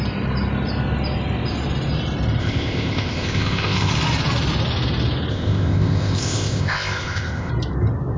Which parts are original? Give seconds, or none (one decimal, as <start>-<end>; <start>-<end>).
0.0-2.4; 3.9-5.3; 7.5-8.2